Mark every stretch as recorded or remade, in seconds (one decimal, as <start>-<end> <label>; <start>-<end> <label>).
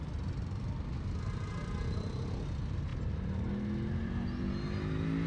0.0-5.3 recorded